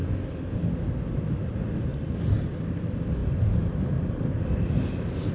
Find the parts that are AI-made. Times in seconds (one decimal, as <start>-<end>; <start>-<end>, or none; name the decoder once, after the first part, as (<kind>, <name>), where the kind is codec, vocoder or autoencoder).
none